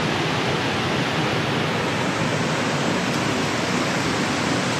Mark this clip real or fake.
real